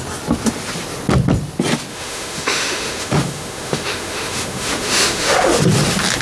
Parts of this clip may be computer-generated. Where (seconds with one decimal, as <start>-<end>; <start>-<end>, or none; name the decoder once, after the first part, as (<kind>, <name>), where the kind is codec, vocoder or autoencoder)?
1.9-5.6 (autoencoder, DAC-VAE)